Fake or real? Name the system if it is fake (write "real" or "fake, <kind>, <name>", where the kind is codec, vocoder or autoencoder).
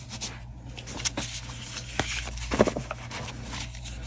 real